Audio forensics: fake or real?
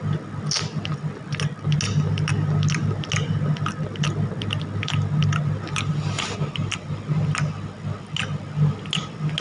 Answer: real